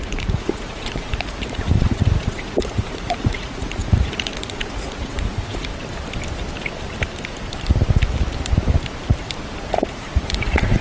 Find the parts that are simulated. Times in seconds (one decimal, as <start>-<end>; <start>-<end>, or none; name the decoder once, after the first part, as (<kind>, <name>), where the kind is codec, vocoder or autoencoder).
0.0-5.7 (vocoder, Vocos); 9.7-10.8